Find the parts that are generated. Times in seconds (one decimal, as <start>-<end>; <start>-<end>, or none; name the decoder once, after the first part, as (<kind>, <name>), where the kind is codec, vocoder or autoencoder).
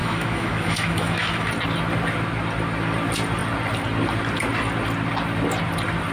0.0-1.5 (autoencoder, DAC-VAE)